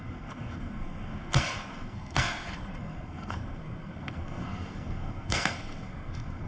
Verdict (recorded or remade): remade